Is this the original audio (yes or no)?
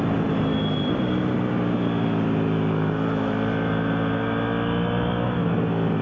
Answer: yes